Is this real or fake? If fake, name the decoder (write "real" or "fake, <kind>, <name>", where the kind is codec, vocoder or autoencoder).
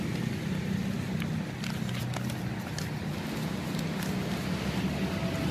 real